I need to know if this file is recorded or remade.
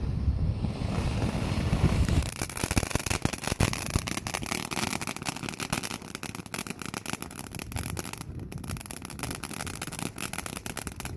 recorded